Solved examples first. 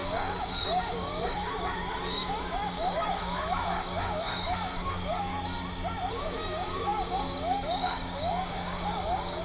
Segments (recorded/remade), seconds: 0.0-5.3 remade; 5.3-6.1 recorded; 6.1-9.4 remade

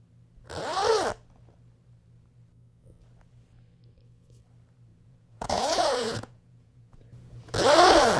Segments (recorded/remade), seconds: 0.0-4.9 recorded; 4.9-7.4 remade; 7.4-8.2 recorded

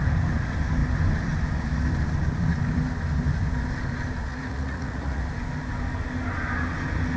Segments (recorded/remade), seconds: 0.0-4.3 recorded; 4.3-5.2 remade; 5.2-7.2 recorded

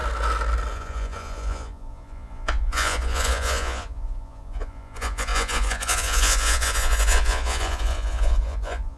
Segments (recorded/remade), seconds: 0.0-0.7 recorded; 0.7-9.0 remade

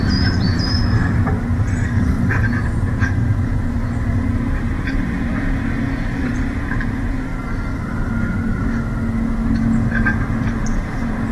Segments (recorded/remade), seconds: 0.0-3.8 remade; 3.8-6.2 recorded; 6.2-7.3 remade; 7.3-10.4 recorded; 10.4-11.3 remade